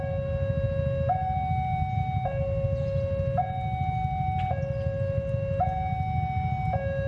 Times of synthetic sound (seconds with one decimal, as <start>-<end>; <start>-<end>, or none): none